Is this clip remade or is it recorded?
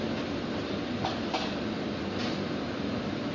recorded